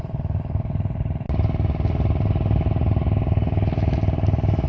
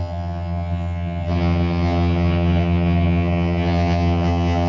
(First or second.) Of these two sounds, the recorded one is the first